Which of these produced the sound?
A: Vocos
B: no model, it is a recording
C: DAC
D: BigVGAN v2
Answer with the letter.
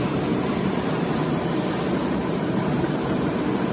D